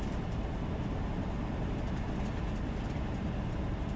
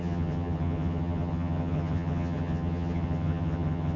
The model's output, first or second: second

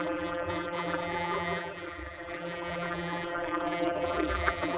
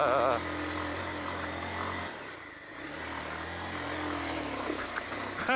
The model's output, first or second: first